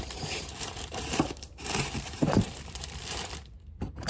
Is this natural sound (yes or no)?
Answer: no